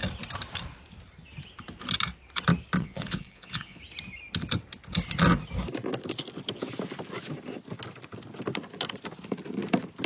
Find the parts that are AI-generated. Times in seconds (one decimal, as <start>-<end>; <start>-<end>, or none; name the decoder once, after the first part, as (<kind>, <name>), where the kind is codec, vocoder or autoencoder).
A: 2.8-3.8 (vocoder, Vocos)